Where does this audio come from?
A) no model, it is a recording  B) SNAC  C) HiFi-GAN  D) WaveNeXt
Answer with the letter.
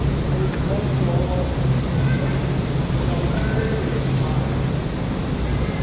A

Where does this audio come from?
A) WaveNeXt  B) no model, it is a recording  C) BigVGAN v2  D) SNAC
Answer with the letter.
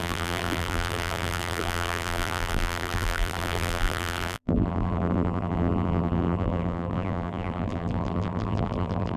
C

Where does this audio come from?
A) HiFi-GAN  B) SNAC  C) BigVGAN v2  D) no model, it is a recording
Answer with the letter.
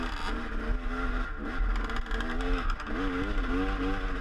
D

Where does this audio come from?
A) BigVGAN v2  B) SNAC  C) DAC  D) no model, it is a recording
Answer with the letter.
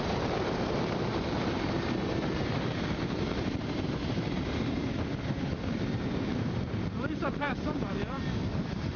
A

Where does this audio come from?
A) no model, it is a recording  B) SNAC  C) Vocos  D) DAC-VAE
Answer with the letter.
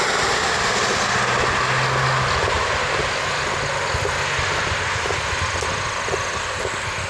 A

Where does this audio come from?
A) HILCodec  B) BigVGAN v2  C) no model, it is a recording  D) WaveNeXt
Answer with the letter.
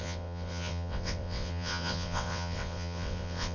D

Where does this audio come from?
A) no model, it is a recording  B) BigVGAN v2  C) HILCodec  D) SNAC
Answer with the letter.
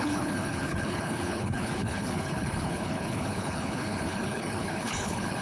C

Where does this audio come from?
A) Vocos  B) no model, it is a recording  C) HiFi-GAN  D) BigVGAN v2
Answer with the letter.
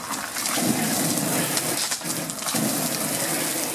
B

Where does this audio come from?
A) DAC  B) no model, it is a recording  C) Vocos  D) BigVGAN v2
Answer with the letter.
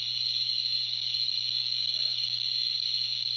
A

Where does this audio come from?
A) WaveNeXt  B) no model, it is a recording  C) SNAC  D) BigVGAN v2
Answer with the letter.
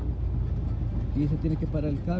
B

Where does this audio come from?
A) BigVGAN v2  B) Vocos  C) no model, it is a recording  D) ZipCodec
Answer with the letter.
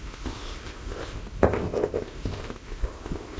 D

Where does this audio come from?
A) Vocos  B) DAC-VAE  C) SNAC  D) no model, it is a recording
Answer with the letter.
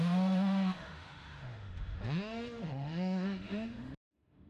B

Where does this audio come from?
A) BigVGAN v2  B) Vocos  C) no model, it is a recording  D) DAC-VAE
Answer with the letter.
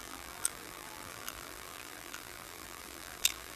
A